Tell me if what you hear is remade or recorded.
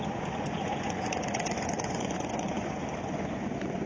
remade